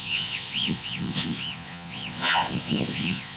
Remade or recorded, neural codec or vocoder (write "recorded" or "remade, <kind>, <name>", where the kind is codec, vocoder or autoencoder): remade, vocoder, Vocos